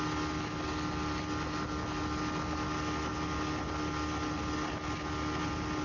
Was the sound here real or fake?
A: real